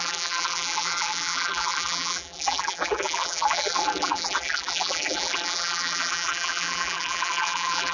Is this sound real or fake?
fake